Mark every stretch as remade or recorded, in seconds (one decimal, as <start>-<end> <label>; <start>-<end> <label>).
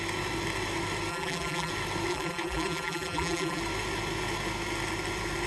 0.0-1.1 recorded; 1.1-1.7 remade; 1.7-2.1 recorded; 2.1-3.6 remade; 3.6-5.5 recorded